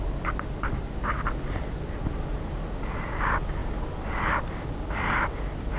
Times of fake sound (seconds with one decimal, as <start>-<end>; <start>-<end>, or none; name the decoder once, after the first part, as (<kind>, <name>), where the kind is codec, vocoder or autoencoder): none